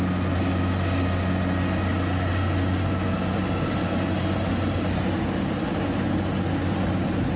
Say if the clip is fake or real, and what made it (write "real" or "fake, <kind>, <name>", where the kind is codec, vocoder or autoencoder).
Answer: real